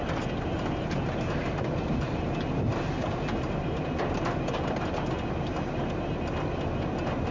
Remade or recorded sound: recorded